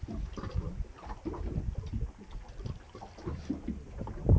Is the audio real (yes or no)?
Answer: yes